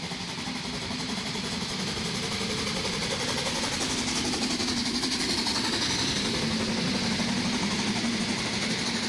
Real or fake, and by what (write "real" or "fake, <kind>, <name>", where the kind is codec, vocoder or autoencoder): real